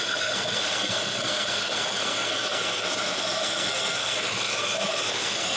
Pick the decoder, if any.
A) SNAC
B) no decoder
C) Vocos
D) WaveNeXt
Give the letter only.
A